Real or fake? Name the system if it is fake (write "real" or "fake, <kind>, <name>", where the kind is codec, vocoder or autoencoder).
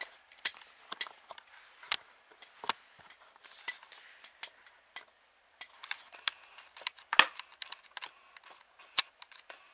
real